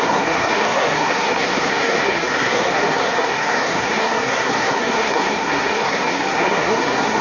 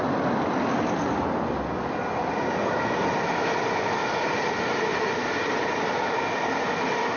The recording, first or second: second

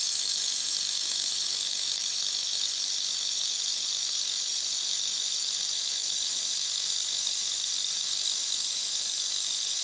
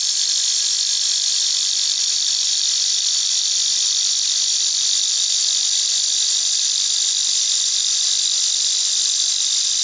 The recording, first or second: second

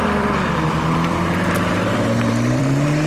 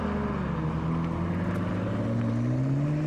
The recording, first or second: second